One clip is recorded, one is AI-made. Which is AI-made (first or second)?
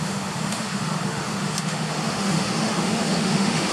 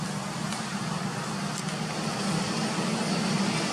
first